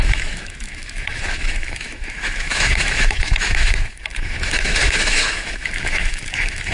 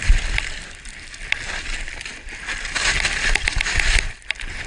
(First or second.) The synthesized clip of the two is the first